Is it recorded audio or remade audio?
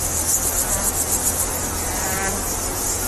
recorded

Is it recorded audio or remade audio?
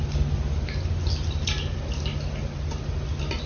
recorded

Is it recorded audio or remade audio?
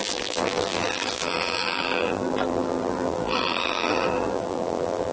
remade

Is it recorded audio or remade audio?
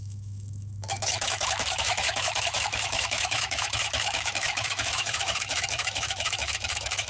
remade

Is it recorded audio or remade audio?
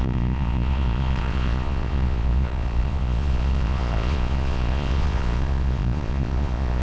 remade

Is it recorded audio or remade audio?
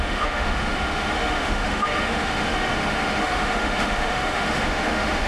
remade